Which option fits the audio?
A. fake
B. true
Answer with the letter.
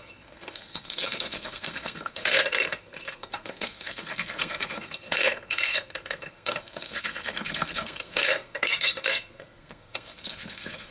A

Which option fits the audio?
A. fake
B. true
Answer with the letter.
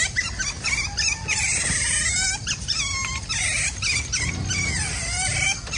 B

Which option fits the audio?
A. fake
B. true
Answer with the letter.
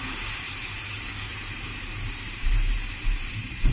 A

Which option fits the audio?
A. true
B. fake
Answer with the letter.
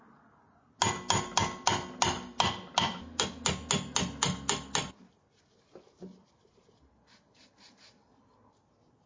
A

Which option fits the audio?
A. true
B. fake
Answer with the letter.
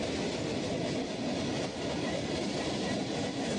A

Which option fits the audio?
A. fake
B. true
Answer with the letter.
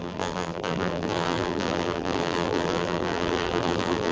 A